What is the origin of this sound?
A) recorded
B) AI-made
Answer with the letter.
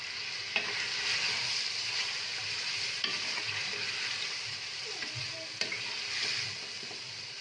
A